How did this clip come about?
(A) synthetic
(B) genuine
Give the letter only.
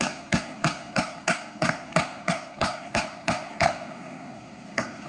A